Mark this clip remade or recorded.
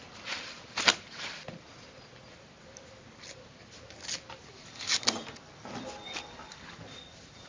recorded